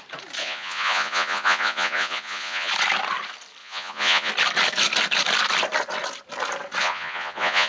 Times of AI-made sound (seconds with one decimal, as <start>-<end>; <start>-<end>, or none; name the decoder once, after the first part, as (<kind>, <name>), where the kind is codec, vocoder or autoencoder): 0.4-2.7 (vocoder, Vocos); 3.6-4.3; 6.8-7.7